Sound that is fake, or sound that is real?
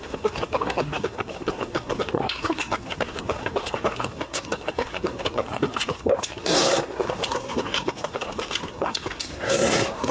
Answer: fake